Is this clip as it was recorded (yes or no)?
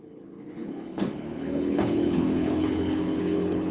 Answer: no